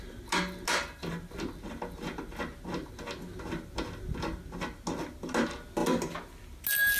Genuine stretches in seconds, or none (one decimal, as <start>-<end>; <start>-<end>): 0.0-7.0